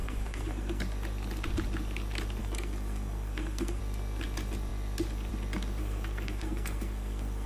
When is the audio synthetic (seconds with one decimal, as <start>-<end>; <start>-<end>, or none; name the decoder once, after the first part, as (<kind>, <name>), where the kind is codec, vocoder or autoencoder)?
0.0-0.8 (codec, SNAC); 2.4-3.8; 5.8-7.5